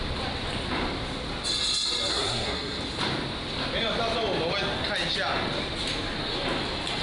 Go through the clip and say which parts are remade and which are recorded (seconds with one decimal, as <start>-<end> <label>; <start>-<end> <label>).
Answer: 0.0-2.1 recorded; 2.1-2.8 remade; 2.8-7.0 recorded